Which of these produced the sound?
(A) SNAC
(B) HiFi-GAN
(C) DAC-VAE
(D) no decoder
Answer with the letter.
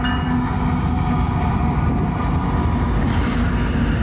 D